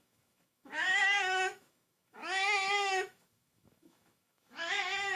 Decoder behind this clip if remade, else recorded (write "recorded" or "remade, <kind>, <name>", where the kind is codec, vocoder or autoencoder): remade, autoencoder, DAC-VAE